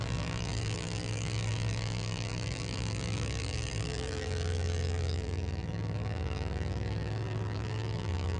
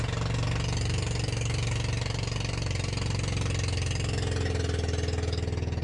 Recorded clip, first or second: second